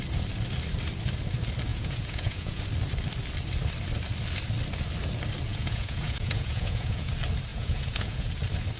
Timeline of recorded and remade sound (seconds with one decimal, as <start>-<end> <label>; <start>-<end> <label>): 0.0-1.7 recorded; 1.7-2.6 remade; 2.6-5.5 recorded; 5.5-7.1 remade; 7.1-7.5 recorded; 7.5-8.3 remade; 8.3-8.8 recorded